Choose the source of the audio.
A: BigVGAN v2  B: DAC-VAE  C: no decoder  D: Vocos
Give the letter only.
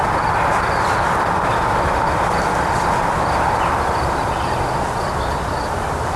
C